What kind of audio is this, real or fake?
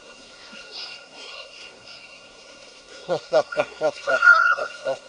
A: fake